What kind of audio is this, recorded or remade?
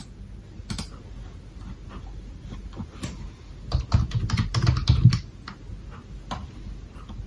recorded